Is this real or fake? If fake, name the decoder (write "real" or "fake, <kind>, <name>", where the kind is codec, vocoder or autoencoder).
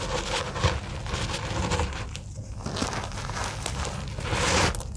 real